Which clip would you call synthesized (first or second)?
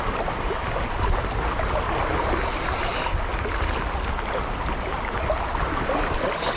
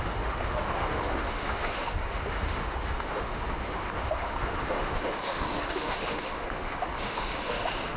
second